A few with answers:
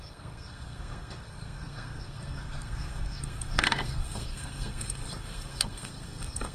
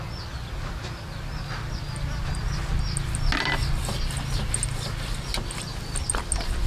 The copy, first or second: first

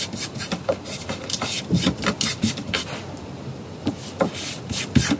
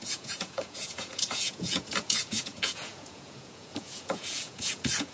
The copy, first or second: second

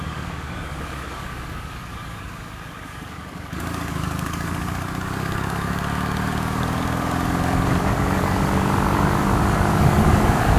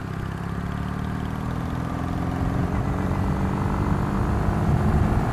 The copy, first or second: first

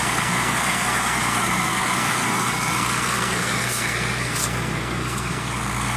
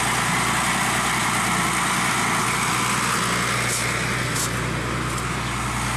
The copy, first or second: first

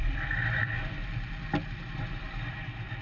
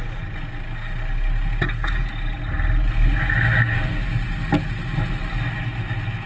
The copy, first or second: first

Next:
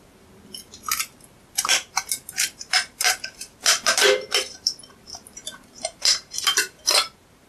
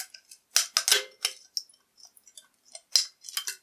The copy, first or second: first